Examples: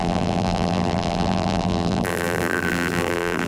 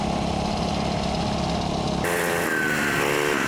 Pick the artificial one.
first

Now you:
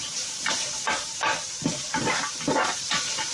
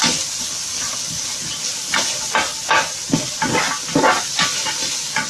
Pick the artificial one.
first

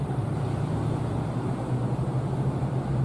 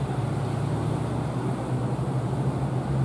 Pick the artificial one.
first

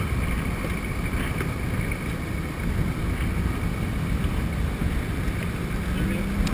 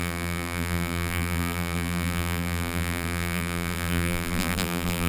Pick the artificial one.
second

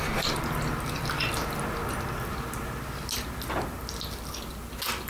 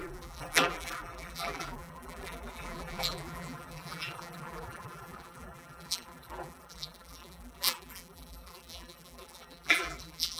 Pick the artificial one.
second